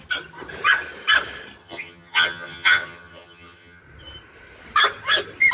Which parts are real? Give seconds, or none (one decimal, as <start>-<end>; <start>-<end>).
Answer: 0.0-1.6; 3.8-5.5